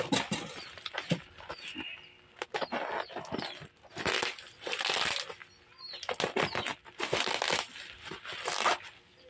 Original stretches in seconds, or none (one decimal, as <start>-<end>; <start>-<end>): 0.0-9.3